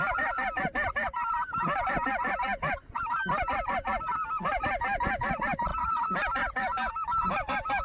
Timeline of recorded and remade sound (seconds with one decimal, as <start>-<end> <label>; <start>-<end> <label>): 0.0-3.2 remade; 3.2-4.0 recorded; 4.0-7.8 remade